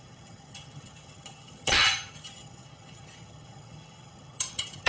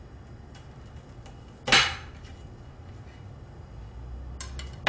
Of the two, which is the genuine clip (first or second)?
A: second